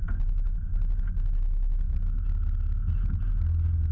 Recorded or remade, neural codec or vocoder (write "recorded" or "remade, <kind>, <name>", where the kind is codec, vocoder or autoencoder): recorded